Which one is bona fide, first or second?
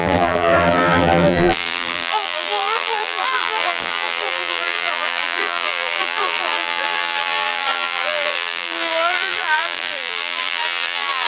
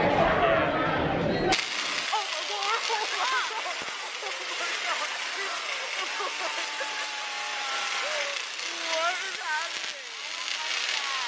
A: second